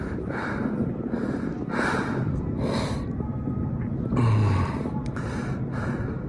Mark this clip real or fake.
real